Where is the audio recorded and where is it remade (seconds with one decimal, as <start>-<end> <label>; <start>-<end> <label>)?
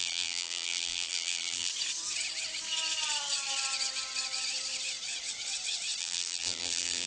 0.0-1.7 remade; 1.7-6.0 recorded; 6.0-7.1 remade